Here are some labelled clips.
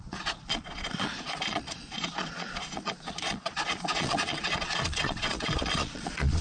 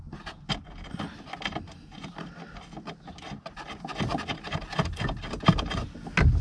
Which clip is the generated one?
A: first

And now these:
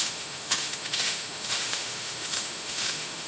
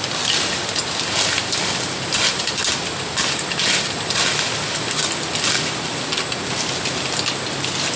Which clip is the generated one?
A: first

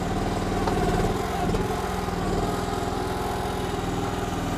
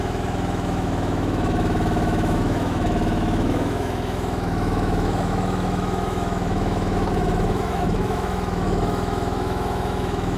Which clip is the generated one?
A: second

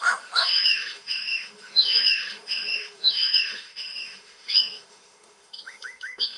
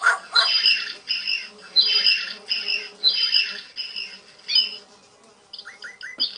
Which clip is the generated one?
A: first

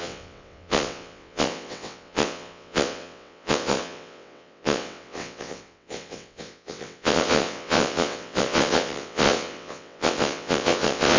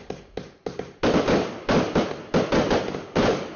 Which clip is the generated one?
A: first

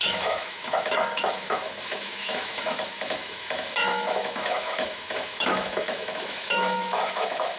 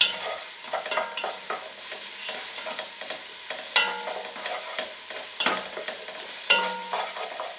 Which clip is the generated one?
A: first